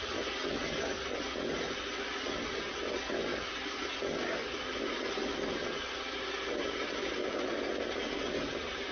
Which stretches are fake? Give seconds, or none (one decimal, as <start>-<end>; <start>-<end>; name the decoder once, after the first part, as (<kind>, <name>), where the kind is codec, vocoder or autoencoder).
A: none

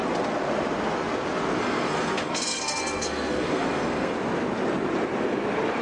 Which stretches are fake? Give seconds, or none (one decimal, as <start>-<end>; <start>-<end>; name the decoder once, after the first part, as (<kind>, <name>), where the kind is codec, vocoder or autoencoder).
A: 1.6-4.1 (codec, SNAC)

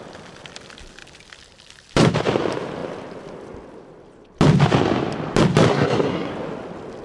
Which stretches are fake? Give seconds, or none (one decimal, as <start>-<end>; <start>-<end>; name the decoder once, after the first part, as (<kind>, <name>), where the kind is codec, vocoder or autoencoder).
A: 5.7-6.3 (codec, SNAC)

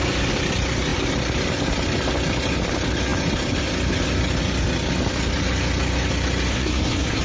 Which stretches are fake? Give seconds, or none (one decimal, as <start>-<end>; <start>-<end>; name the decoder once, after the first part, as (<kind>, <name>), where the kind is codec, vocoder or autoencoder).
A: 6.5-7.2 (codec, SNAC)

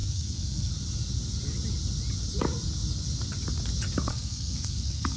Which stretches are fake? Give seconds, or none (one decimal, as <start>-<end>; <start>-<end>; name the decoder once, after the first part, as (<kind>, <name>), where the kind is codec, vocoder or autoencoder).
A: 0.0-0.7 (codec, SNAC); 4.1-5.2

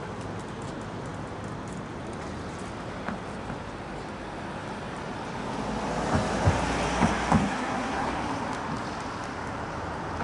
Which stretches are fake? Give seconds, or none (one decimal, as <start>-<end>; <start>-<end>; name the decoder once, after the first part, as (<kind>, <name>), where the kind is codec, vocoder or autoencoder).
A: 7.4-8.1 (codec, SNAC)

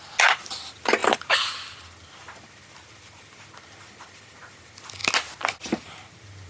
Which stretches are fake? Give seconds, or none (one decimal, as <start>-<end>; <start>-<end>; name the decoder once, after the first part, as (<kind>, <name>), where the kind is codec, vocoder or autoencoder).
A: none

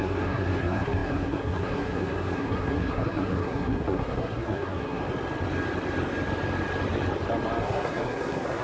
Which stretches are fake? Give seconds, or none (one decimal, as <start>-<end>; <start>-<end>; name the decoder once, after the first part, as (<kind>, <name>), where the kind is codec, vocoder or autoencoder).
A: 0.0-5.0 (codec, SNAC); 7.6-8.6